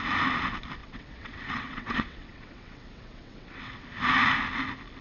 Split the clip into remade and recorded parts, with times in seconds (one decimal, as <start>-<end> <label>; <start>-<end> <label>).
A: 0.0-0.8 recorded; 0.8-3.8 remade; 3.8-5.0 recorded

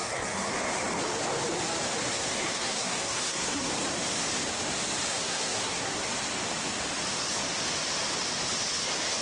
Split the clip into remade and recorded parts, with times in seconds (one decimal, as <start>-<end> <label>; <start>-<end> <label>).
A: 0.0-0.5 remade; 0.5-2.1 recorded; 2.1-3.7 remade; 3.7-5.1 recorded; 5.1-6.1 remade; 6.1-9.2 recorded

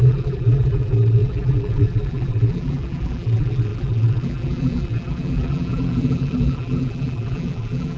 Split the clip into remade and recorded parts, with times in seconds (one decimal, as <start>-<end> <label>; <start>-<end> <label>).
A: 0.0-8.0 remade